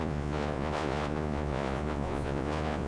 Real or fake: fake